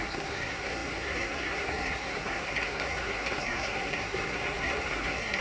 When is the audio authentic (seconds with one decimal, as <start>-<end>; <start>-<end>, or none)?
none